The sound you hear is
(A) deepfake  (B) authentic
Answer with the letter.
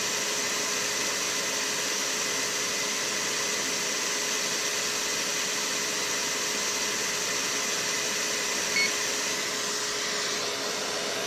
B